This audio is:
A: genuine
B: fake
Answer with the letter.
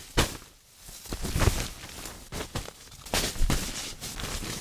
A